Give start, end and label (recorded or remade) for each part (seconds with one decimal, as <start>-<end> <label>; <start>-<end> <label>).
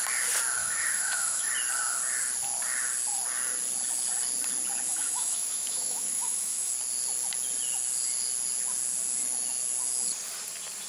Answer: 0.0-0.6 recorded; 0.6-1.5 remade; 1.5-4.9 recorded; 4.9-6.7 remade; 6.7-10.9 recorded